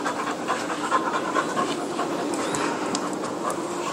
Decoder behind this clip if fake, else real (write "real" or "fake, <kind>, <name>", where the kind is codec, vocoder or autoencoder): real